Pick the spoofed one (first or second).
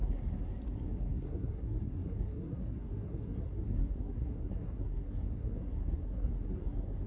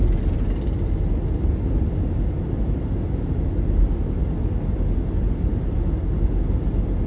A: first